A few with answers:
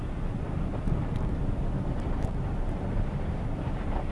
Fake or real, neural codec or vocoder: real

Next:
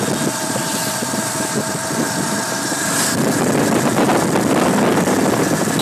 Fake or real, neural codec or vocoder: real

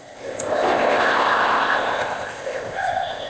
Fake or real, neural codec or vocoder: fake, codec, ZipCodec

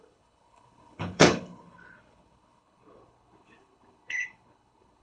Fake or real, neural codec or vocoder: fake, codec, HILCodec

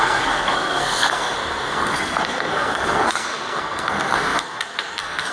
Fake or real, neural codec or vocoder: fake, codec, SNAC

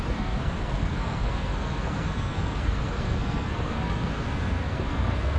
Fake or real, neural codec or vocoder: fake, codec, SNAC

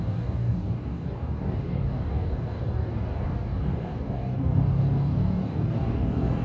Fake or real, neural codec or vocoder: fake, codec, DAC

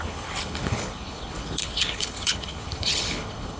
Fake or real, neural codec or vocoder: fake, codec, HILCodec